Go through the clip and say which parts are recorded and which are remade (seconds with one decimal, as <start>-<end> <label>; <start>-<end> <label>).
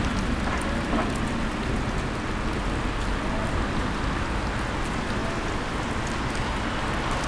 0.0-3.4 recorded; 3.4-4.4 remade; 4.4-7.3 recorded